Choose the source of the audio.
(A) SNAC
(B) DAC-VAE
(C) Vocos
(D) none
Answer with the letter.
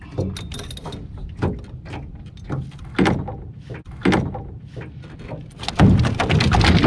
D